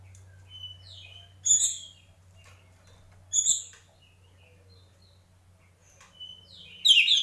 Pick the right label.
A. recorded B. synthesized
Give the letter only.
A